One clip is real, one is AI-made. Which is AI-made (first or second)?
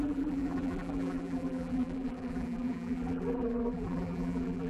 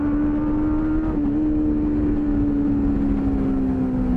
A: first